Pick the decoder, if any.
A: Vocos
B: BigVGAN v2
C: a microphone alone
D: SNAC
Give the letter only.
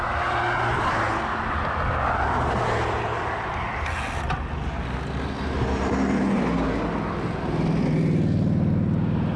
C